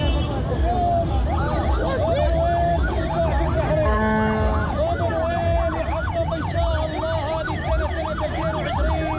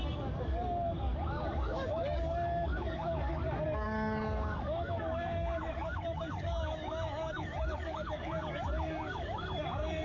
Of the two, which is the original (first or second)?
first